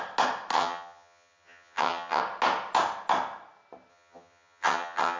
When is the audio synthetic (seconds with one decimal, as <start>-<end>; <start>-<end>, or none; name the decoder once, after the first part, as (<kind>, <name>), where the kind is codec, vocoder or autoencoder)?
0.5-2.2 (vocoder, HiFi-GAN); 3.9-5.2